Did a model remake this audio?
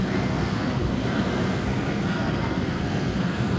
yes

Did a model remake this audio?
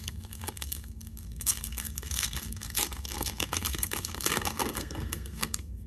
yes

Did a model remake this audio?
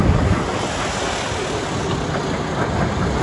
no